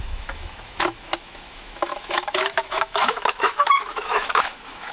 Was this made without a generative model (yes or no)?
no